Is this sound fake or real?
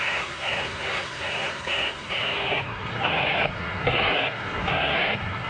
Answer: fake